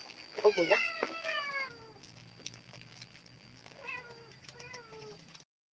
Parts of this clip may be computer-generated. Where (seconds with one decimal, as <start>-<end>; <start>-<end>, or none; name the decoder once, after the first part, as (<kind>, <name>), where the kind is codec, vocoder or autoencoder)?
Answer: 0.0-1.5 (vocoder, BigVGAN v2); 2.0-3.9